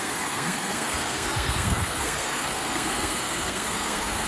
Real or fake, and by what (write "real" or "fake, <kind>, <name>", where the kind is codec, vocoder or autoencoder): fake, codec, SNAC